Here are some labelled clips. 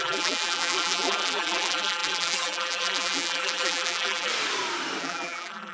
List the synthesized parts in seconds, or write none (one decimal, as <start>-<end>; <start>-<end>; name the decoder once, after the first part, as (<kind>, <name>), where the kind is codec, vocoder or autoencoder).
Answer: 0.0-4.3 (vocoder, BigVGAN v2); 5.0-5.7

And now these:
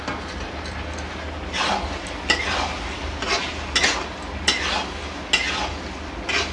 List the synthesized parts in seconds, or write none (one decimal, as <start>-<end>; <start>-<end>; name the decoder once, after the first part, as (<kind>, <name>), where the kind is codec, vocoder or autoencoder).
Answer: none

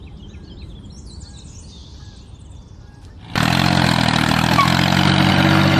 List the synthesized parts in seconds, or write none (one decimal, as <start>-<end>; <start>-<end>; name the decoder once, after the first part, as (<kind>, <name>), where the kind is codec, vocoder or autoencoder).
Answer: none

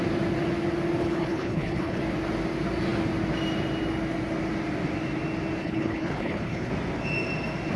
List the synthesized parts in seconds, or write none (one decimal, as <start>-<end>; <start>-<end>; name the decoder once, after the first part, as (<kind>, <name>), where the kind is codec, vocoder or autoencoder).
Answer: 1.0-2.0 (codec, HILCodec); 5.6-6.7

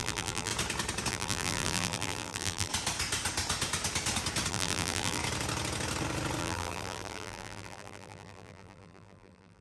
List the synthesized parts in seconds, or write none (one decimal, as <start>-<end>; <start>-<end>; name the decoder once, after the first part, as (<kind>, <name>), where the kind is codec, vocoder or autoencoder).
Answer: 0.0-0.5 (vocoder, BigVGAN v2); 1.1-2.7; 4.5-5.2; 6.4-9.6

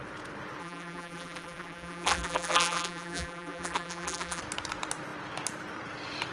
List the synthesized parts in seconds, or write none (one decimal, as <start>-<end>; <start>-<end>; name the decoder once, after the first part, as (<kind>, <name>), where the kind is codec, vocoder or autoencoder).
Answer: 0.6-4.4 (vocoder, BigVGAN v2)

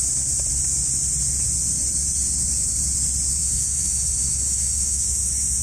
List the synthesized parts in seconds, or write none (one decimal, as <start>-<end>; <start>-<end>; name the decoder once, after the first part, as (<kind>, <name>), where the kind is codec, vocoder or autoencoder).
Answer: 3.4-5.6 (autoencoder, DAC-VAE)